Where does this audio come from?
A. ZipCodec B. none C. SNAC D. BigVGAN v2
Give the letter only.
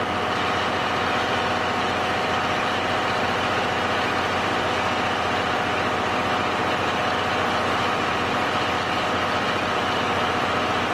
B